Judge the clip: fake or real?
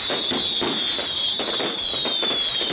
real